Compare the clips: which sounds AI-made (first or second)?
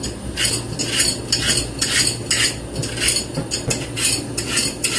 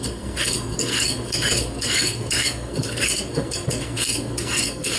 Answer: second